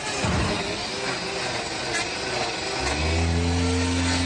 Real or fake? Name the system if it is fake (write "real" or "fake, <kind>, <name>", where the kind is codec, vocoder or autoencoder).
real